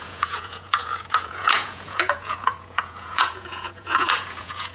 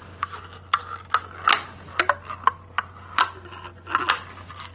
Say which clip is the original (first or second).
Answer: second